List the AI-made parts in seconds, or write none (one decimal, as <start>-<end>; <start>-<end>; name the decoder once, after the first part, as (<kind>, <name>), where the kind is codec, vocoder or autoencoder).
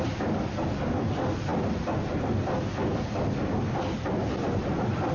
none